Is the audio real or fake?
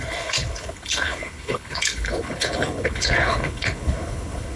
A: fake